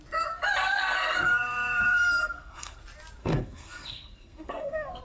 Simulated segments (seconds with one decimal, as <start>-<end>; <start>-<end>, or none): 0.6-2.8; 3.2-5.0